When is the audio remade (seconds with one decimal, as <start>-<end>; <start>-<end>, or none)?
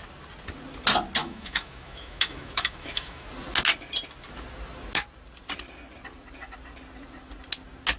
1.2-3.3